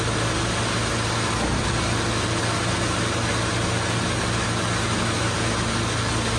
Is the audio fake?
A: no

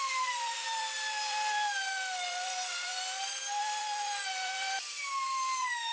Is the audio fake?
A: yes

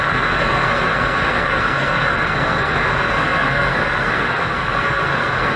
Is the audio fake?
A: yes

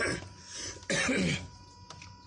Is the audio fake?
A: no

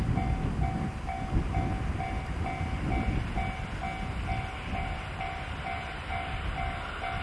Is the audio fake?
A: no